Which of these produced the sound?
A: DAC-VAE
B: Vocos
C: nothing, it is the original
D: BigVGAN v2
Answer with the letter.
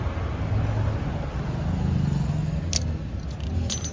C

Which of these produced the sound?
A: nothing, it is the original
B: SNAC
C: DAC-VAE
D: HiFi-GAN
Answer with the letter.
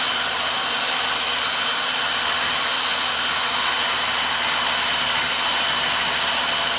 A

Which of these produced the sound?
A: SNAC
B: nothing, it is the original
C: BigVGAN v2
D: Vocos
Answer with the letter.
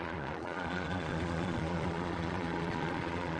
D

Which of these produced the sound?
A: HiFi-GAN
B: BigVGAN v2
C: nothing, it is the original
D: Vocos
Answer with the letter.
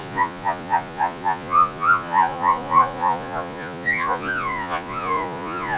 D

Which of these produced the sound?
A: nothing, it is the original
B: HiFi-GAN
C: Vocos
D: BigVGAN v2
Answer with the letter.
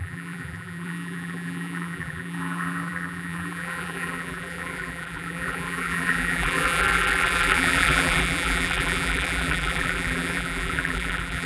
D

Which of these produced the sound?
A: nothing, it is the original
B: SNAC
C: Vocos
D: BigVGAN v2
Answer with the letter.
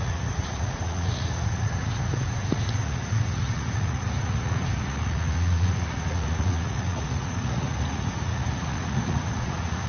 C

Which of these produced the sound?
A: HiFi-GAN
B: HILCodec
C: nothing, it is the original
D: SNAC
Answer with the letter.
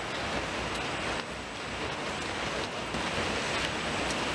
C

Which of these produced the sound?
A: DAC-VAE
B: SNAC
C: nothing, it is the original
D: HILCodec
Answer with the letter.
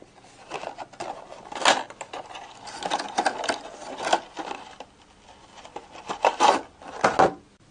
C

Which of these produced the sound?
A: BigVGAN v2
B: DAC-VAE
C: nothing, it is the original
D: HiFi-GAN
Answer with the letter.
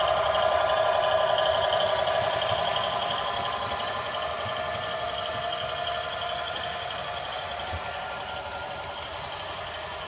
A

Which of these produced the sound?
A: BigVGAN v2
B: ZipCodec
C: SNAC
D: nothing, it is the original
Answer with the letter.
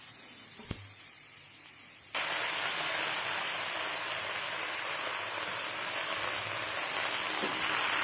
D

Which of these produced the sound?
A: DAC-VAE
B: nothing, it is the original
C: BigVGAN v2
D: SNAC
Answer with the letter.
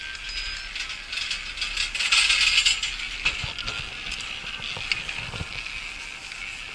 B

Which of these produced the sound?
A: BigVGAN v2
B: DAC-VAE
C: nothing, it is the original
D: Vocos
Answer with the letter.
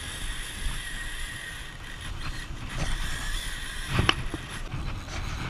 C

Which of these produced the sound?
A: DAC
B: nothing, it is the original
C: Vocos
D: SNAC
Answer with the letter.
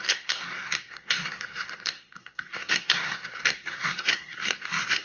D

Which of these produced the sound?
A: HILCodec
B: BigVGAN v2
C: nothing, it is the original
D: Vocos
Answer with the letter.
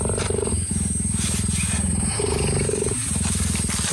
C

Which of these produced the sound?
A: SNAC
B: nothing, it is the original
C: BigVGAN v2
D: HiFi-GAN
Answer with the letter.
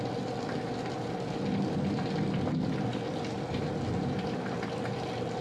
B